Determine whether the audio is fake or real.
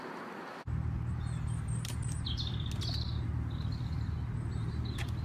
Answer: real